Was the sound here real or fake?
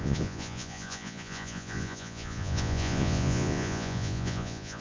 fake